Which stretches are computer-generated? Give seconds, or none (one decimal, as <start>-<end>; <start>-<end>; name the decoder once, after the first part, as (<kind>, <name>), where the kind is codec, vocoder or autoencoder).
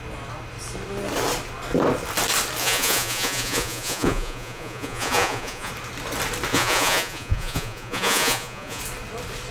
2.6-5.7 (vocoder, Vocos); 6.5-8.8